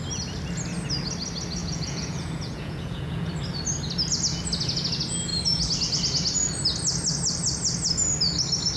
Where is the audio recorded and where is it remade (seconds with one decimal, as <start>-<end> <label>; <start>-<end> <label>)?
0.0-1.6 recorded; 1.6-3.3 remade; 3.3-8.8 recorded